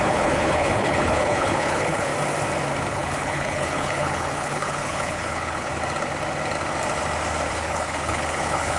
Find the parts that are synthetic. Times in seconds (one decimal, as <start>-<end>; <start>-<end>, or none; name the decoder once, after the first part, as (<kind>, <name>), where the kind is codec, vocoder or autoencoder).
0.0-2.1 (codec, HILCodec); 2.9-5.7; 7.5-8.8